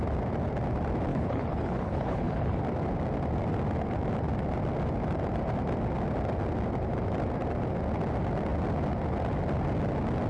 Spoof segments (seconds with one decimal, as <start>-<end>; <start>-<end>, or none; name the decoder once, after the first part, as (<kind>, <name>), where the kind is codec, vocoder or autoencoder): 1.1-2.6 (codec, HILCodec)